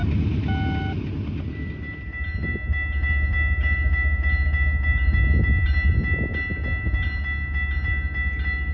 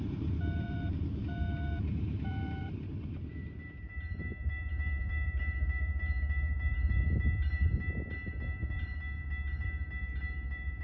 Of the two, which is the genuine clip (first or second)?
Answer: first